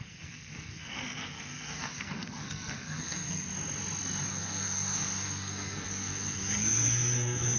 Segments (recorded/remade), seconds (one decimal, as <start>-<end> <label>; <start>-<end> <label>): 0.0-3.5 remade; 3.5-4.3 recorded; 4.3-7.6 remade